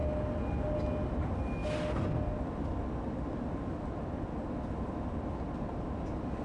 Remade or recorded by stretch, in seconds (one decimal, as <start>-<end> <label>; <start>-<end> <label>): 0.0-6.4 recorded